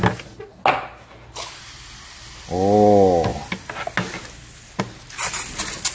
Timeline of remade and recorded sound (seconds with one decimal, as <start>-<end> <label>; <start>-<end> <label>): 0.0-5.9 recorded

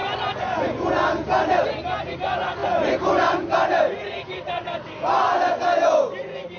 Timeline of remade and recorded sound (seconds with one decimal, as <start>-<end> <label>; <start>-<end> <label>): 0.0-6.6 recorded

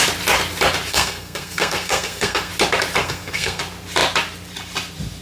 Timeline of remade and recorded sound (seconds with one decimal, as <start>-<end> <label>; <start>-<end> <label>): 0.0-0.9 recorded; 0.9-2.5 remade; 2.5-3.0 recorded; 3.0-3.6 remade; 3.6-5.2 recorded

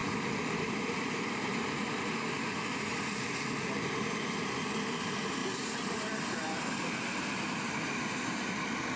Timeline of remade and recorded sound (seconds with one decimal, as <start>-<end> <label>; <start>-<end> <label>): 0.0-2.8 remade; 2.8-5.4 recorded; 5.4-9.0 remade